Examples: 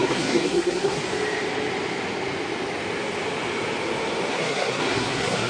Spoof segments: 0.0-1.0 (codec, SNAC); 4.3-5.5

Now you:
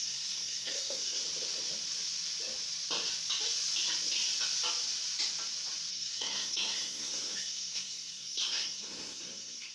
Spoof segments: 0.0-1.2 (codec, SNAC); 5.9-9.7

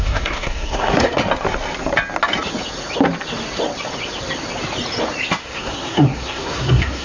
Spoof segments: 0.0-1.2 (codec, SNAC); 5.4-7.0

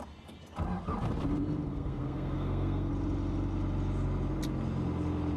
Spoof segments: 1.7-2.9 (codec, SNAC)

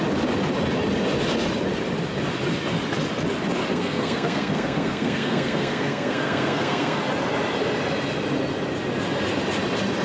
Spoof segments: 3.7-7.0 (codec, SNAC)

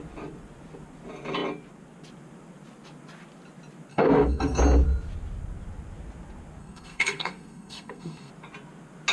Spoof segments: 3.9-4.6 (codec, SNAC); 6.6-8.3